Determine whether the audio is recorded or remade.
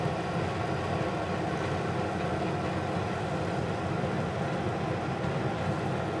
recorded